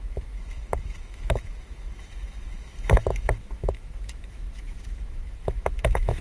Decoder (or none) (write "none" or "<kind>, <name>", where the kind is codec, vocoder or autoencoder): autoencoder, DAC-VAE